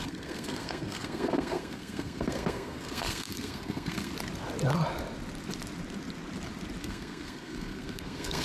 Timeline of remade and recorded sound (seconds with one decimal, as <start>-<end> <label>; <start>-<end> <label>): 0.0-4.1 remade; 4.1-6.8 recorded; 6.8-8.4 remade